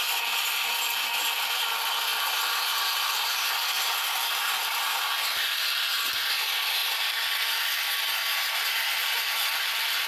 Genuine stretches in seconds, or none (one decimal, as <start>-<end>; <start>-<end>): none